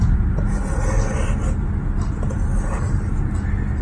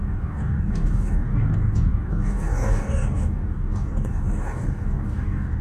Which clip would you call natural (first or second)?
first